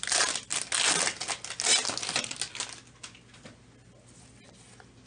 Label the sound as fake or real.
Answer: real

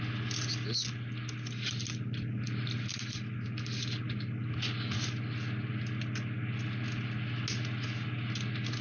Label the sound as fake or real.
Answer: real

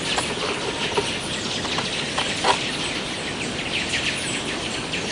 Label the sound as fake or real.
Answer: real